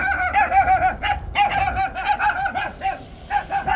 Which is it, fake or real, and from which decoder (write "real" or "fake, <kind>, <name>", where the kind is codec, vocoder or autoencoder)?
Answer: real